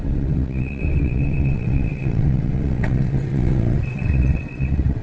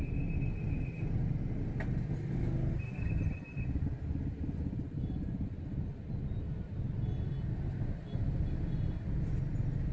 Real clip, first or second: second